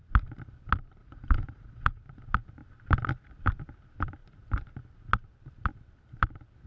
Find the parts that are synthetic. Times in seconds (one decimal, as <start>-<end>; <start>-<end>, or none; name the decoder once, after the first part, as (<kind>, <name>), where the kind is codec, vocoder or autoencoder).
1.0-2.0 (vocoder, Vocos)